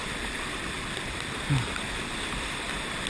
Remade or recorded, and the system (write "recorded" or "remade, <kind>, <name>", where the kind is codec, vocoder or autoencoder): remade, vocoder, BigVGAN v2